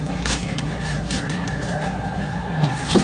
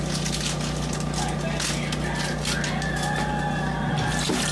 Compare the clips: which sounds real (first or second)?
second